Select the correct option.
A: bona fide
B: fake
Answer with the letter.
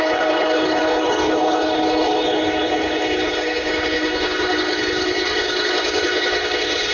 B